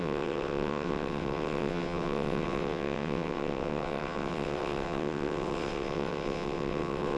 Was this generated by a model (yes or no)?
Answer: yes